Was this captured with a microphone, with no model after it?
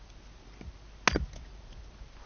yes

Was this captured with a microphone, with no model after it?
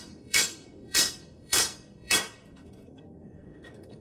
no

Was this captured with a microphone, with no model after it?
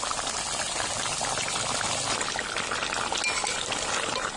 yes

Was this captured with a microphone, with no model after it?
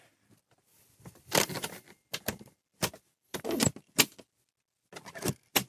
yes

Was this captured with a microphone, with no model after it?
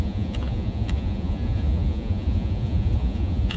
no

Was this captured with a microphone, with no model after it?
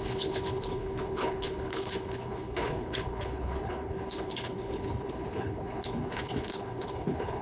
no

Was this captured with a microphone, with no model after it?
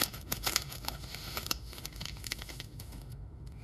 no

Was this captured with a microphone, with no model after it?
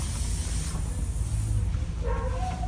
yes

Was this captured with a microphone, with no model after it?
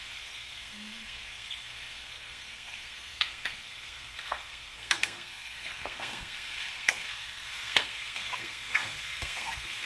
no